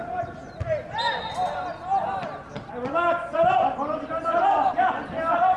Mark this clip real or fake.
real